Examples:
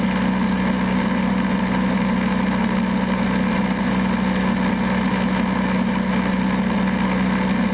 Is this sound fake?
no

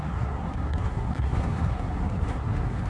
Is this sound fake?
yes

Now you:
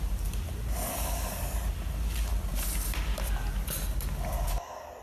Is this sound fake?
no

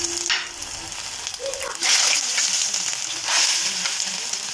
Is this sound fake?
no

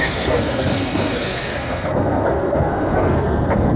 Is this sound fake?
yes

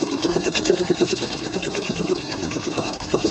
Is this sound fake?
yes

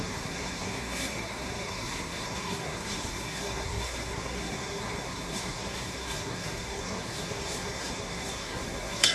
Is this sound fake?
yes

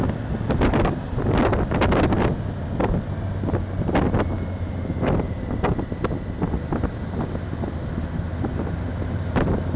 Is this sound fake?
no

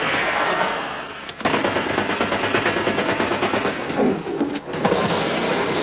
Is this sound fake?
yes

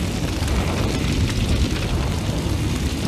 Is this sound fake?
no